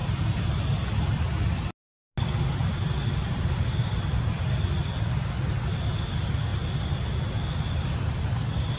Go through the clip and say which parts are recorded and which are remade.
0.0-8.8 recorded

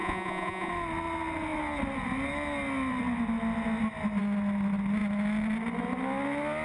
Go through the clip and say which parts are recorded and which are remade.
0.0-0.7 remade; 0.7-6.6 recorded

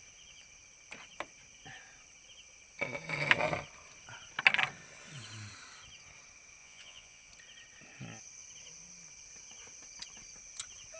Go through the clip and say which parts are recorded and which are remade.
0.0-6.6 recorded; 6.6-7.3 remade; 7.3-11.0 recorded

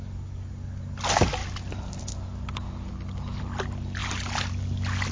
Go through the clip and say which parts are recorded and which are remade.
0.0-5.1 recorded

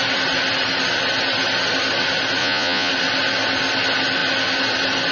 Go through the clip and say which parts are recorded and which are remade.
0.0-2.4 recorded; 2.4-2.9 remade; 2.9-5.1 recorded